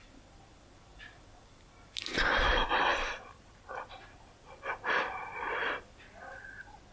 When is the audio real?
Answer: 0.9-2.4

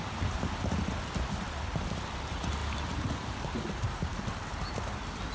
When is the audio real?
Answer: none

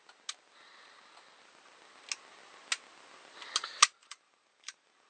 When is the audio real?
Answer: 0.0-4.0